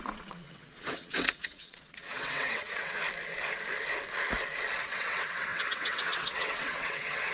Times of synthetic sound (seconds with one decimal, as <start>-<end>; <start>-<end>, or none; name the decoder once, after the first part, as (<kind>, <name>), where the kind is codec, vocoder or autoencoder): 0.0-3.0 (vocoder, WaveNeXt); 4.8-7.3